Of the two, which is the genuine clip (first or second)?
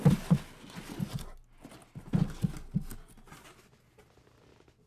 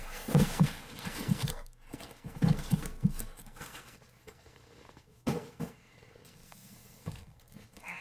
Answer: first